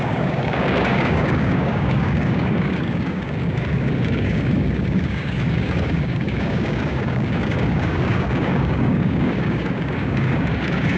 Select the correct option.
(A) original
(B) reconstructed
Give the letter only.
B